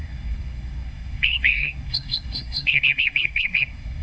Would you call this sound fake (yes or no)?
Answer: yes